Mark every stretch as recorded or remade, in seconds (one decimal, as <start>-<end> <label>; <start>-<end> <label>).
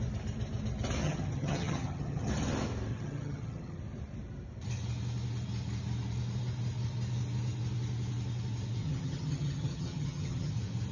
0.0-1.0 recorded; 1.0-2.3 remade; 2.3-2.9 recorded; 2.9-3.8 remade; 3.8-8.8 recorded; 8.8-10.5 remade; 10.5-10.9 recorded